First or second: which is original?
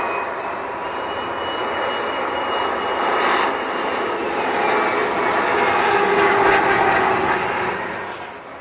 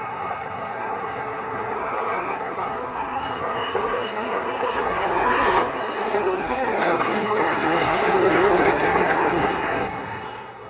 first